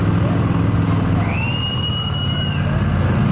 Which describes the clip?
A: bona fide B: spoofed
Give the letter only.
A